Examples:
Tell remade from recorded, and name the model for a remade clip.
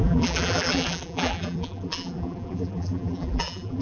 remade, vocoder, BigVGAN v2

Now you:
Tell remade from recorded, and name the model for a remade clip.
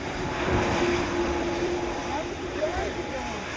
remade, vocoder, BigVGAN v2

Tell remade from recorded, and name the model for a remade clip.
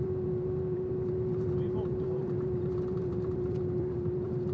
remade, vocoder, BigVGAN v2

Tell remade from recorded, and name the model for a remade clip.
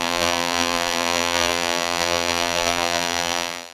remade, vocoder, BigVGAN v2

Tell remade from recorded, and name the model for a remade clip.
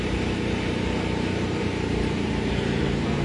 remade, vocoder, BigVGAN v2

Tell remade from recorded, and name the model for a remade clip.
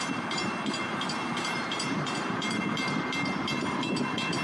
remade, vocoder, BigVGAN v2